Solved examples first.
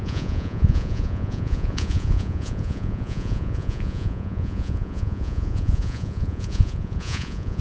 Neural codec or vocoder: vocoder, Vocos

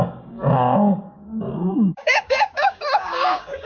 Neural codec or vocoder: codec, DAC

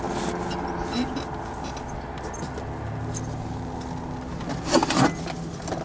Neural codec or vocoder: none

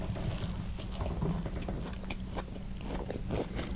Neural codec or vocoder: none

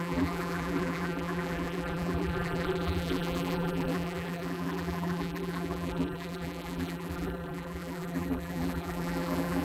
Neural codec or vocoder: vocoder, BigVGAN v2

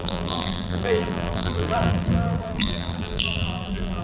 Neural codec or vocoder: vocoder, BigVGAN v2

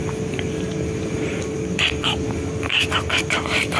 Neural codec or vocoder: none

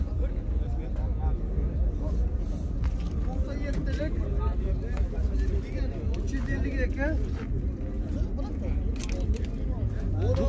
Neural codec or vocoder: none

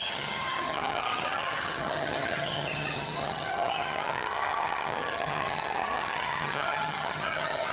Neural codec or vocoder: vocoder, HiFi-GAN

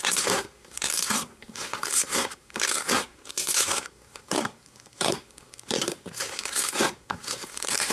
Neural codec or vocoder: codec, SNAC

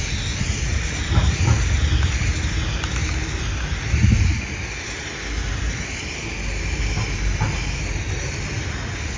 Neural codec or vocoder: none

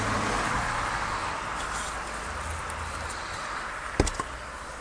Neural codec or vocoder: none